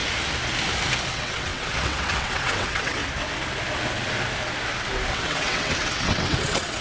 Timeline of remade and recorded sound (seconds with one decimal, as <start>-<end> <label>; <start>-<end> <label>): 0.0-1.1 recorded; 1.1-3.0 remade; 3.0-5.1 recorded; 5.1-6.8 remade